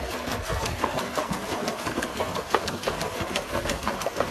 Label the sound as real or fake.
fake